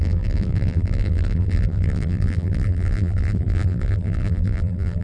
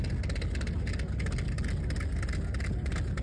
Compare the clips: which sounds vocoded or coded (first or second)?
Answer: first